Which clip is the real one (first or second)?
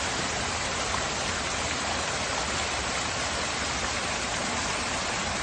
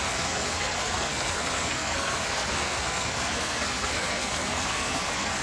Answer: first